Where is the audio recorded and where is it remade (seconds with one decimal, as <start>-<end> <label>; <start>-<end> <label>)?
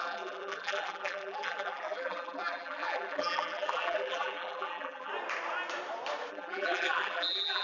0.0-5.1 remade; 5.1-6.3 recorded; 6.3-7.6 remade